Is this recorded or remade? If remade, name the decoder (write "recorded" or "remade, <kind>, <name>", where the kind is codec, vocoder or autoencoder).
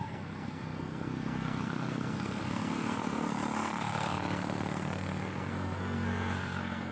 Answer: remade, codec, SNAC